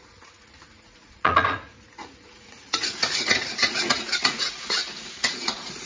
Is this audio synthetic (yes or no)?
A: yes